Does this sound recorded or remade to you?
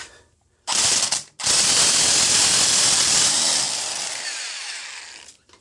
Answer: remade